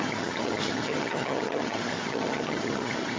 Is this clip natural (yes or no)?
no